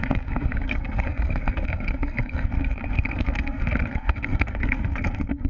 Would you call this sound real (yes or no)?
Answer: no